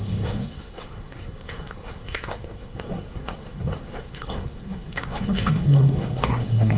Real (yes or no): no